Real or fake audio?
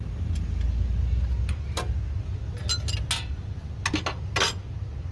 real